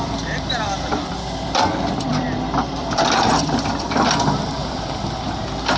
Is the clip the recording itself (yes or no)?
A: no